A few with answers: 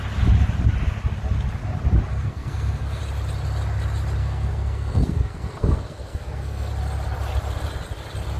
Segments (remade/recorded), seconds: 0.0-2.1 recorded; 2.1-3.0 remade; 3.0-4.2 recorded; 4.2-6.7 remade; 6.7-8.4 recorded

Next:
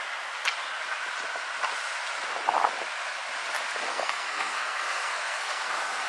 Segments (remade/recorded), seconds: 0.0-3.9 recorded; 3.9-6.1 remade

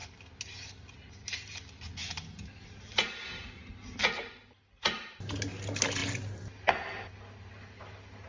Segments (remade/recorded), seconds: 0.0-8.3 recorded

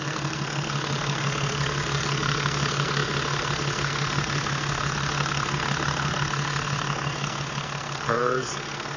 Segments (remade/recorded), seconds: 0.0-9.0 remade

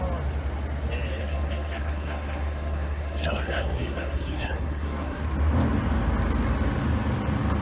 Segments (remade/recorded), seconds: 0.0-1.2 recorded; 1.2-5.2 remade; 5.2-7.6 recorded

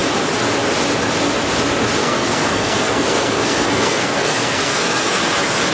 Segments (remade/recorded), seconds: 0.0-2.0 recorded; 2.0-5.2 remade; 5.2-5.7 recorded

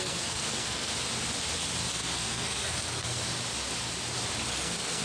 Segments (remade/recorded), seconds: 0.0-0.9 remade; 0.9-1.9 recorded; 1.9-3.3 remade; 3.3-4.5 recorded; 4.5-5.0 remade